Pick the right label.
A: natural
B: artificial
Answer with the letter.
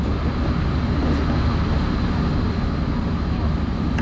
A